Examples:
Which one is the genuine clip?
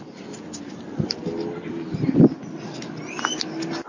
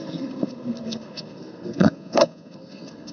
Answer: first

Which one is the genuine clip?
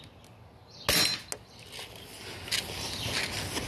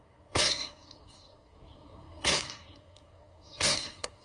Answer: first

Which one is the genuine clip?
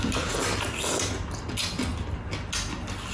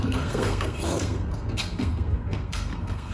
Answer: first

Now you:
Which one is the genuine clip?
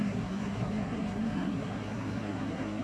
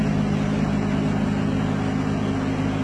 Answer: second